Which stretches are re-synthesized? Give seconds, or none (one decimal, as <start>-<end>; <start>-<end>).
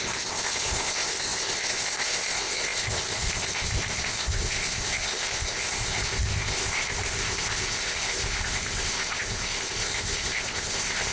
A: 0.0-11.1